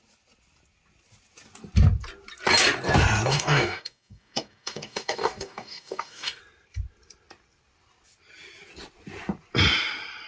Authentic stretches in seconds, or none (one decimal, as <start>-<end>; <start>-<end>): 0.0-3.3; 6.4-10.3